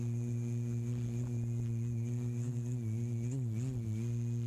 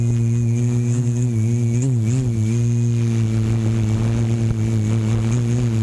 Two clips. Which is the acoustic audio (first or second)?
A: second